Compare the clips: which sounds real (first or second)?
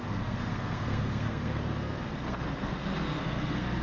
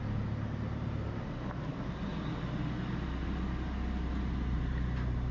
second